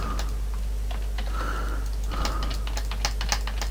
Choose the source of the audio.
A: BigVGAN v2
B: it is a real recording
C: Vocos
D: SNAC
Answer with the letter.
B